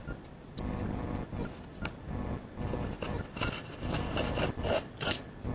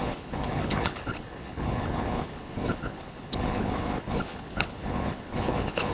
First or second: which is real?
first